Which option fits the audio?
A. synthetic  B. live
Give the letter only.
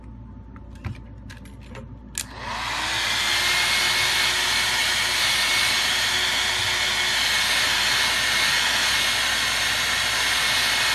B